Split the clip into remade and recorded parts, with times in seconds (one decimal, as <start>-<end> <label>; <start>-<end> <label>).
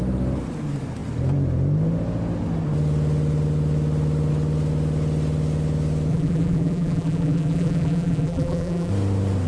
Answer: 0.0-6.1 recorded; 6.1-8.9 remade; 8.9-9.5 recorded